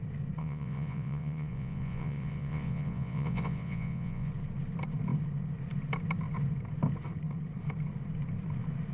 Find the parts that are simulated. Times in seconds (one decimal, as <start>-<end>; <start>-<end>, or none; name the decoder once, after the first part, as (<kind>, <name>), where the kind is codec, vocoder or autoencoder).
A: 0.4-4.3 (vocoder, Vocos)